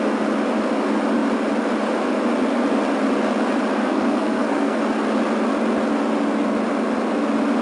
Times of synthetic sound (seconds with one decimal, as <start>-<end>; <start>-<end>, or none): 3.7-4.8